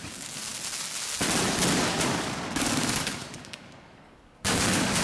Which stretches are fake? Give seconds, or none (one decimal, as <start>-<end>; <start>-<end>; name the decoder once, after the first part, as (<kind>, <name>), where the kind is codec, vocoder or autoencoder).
0.0-0.5 (codec, DAC); 1.9-5.0